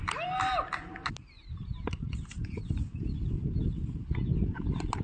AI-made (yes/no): no